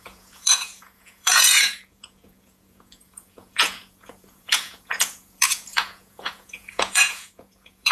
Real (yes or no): no